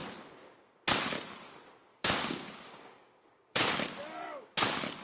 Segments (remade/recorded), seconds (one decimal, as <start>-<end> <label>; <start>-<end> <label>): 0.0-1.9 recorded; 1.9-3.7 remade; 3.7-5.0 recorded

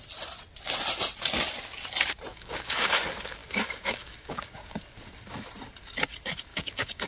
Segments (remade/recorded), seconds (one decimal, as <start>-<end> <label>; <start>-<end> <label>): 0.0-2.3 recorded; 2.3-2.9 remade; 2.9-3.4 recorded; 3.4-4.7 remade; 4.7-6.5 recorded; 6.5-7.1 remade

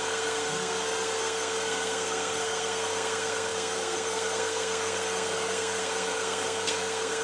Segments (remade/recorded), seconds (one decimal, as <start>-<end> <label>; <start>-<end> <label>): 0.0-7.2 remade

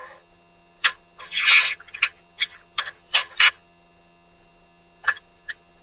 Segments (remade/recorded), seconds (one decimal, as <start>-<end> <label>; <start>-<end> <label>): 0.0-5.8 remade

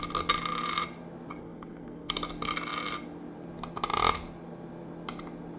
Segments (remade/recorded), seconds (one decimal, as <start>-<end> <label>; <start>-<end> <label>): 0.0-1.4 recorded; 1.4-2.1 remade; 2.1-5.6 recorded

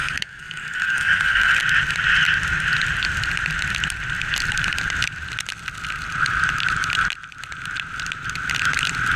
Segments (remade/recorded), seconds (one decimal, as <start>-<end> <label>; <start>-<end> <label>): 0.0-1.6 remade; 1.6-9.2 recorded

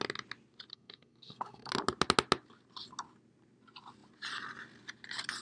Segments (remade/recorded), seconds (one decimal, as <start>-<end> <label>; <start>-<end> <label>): 0.0-0.7 recorded; 0.7-1.7 remade; 1.7-5.4 recorded